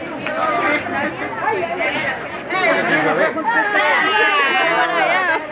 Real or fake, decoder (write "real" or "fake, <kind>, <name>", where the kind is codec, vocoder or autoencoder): real